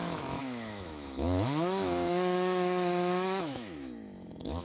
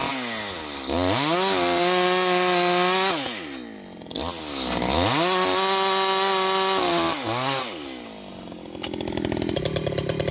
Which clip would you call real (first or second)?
second